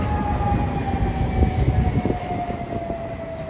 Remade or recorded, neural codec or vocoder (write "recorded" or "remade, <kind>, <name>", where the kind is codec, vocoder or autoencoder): recorded